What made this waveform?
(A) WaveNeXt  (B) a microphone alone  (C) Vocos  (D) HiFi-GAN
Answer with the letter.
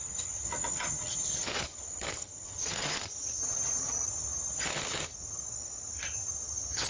D